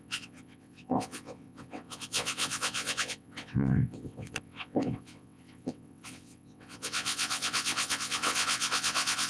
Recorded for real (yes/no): no